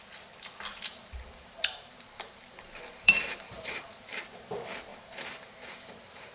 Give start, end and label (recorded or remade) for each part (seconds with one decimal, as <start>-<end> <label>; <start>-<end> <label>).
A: 0.0-0.7 recorded; 0.7-4.1 remade; 4.1-4.9 recorded; 4.9-6.3 remade